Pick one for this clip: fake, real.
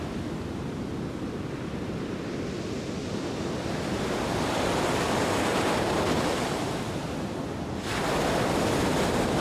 real